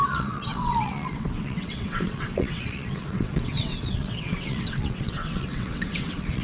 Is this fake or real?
fake